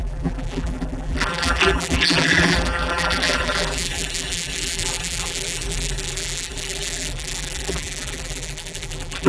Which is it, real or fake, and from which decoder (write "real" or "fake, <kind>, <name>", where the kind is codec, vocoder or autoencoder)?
fake, vocoder, BigVGAN v2